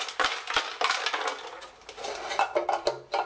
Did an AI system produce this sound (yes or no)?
no